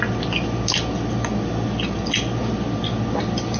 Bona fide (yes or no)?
yes